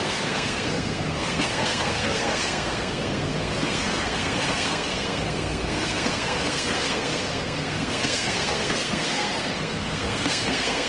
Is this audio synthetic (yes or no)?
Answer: yes